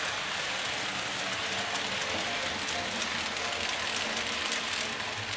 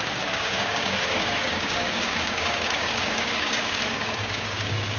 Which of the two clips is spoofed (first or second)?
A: second